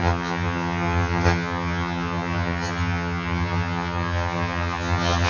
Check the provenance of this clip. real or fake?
fake